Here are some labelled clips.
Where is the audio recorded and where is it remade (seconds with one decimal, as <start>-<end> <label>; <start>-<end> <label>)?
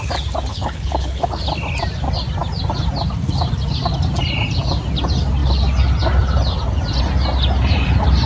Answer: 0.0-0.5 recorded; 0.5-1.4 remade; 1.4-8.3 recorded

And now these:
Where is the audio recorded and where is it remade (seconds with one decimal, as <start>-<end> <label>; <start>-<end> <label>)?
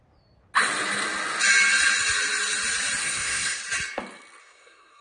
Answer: 0.0-3.0 recorded; 3.0-3.6 remade; 3.6-4.4 recorded; 4.4-5.0 remade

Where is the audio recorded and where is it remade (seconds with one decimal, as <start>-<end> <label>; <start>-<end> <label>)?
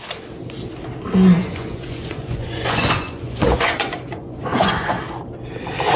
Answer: 0.0-1.4 recorded; 1.4-5.0 remade; 5.0-6.0 recorded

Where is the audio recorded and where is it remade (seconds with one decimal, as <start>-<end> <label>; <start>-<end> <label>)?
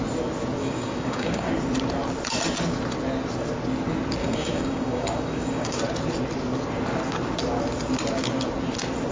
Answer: 0.0-0.6 recorded; 0.6-1.5 remade; 1.5-4.2 recorded; 4.2-5.8 remade; 5.8-9.1 recorded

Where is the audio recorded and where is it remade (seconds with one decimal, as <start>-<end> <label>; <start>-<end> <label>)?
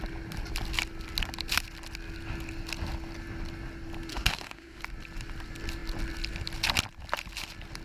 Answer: 0.0-4.1 recorded; 4.1-4.8 remade; 4.8-7.8 recorded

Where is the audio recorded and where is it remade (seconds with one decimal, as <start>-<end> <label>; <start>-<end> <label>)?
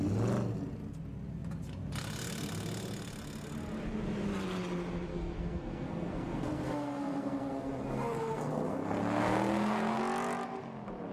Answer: 0.0-5.1 recorded; 5.1-10.0 remade; 10.0-11.1 recorded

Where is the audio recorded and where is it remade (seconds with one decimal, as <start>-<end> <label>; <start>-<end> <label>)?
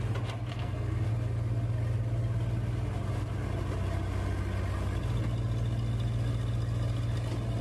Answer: 0.0-0.5 recorded; 0.5-1.1 remade; 1.1-7.6 recorded